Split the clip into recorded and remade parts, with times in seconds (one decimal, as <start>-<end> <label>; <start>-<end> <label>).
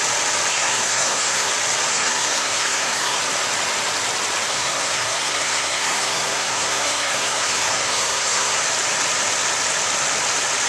0.0-0.5 recorded; 0.5-1.5 remade; 1.5-1.9 recorded; 1.9-3.2 remade; 3.2-4.5 recorded; 4.5-8.6 remade; 8.6-10.7 recorded